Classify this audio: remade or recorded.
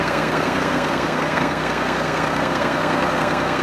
remade